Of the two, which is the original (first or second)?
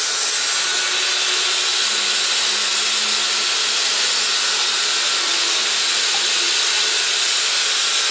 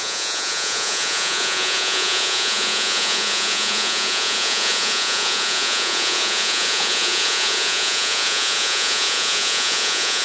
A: first